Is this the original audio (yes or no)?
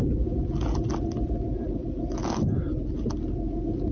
yes